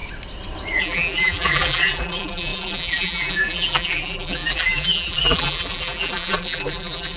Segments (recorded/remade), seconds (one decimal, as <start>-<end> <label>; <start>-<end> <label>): 0.0-0.8 recorded; 0.8-7.2 remade